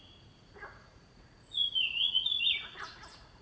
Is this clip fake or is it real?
fake